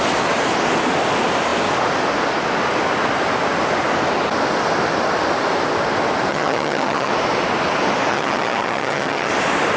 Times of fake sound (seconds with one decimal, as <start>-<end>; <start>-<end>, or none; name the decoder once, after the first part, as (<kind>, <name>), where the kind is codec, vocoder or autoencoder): 6.3-7.1 (vocoder, HiFi-GAN); 8.1-9.3